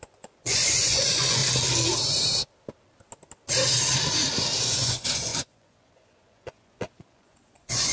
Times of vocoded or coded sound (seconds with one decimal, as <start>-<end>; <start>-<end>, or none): 0.0-1.4; 4.6-7.9